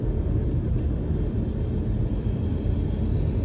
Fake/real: real